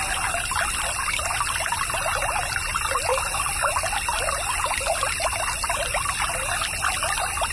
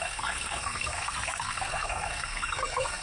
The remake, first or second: second